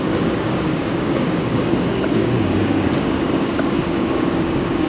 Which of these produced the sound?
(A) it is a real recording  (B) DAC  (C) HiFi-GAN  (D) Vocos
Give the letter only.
B